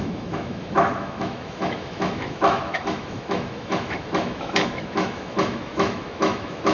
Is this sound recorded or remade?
remade